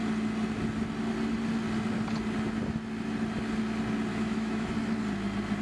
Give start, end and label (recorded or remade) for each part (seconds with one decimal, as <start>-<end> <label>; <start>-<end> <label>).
0.0-4.1 recorded; 4.1-4.7 remade; 4.7-5.6 recorded